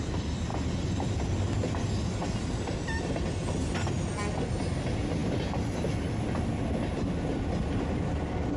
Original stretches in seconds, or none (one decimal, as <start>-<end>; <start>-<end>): 0.0-8.6